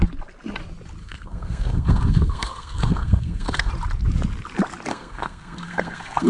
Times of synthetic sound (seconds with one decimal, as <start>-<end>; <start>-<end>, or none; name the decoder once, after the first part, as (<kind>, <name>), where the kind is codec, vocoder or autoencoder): 1.0-3.7 (codec, SNAC); 4.9-6.3